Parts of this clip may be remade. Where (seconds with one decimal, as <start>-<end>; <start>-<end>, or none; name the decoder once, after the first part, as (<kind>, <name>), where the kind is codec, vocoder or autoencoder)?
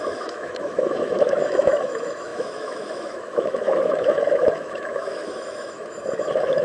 0.0-6.6 (autoencoder, DAC-VAE)